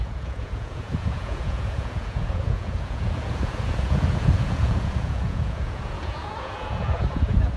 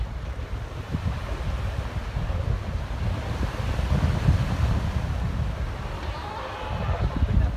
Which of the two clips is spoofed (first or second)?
first